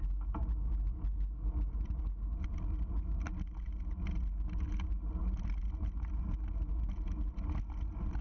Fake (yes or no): no